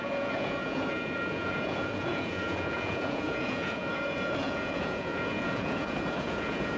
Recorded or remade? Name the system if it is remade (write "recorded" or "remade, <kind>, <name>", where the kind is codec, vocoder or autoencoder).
remade, vocoder, Vocos